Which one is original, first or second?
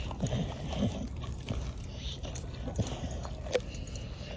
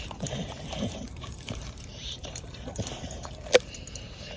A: first